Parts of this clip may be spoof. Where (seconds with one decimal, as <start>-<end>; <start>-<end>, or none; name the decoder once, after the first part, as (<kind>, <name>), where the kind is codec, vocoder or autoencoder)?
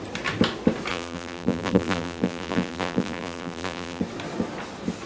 0.9-4.0 (vocoder, BigVGAN v2)